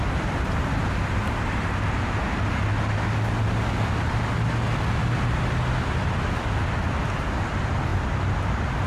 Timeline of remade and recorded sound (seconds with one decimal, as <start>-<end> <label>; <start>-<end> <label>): 0.0-8.9 recorded